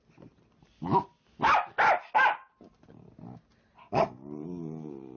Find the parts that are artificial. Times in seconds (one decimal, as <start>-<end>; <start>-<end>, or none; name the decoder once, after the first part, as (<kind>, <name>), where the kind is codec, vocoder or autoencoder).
none